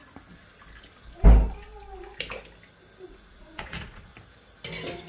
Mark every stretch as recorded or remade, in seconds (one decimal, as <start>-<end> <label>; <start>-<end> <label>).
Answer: 0.0-3.1 recorded; 3.1-4.1 remade; 4.1-5.1 recorded